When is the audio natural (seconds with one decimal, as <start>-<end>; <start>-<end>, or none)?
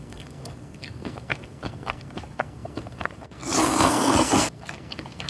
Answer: none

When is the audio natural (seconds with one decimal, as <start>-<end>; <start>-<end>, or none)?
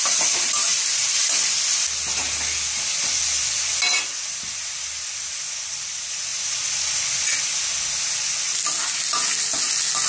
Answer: 0.0-10.1